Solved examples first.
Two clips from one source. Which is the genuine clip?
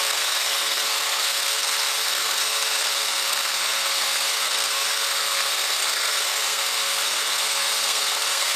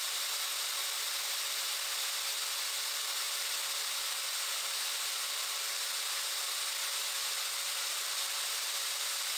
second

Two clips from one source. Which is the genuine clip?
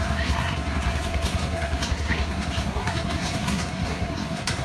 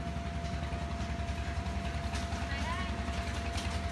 second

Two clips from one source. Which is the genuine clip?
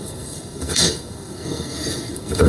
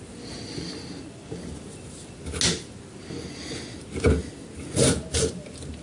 second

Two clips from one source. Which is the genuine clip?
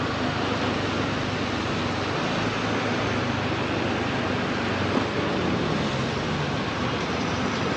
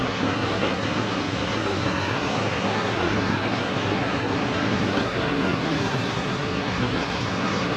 first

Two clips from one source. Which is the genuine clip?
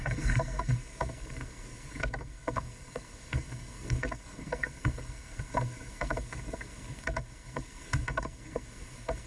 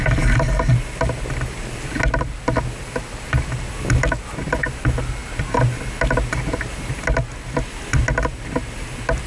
second